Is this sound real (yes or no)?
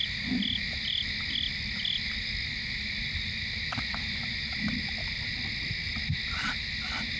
yes